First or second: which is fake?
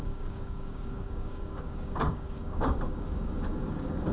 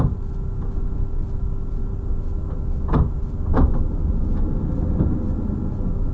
first